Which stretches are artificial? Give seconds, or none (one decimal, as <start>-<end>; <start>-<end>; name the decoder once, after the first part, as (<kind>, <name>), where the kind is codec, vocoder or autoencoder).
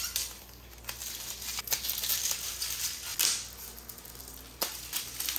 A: none